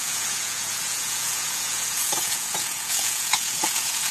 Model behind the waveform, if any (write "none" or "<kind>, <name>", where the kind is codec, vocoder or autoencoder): vocoder, Vocos